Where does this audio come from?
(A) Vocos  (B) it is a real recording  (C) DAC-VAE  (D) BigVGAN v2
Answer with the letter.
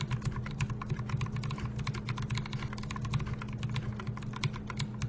B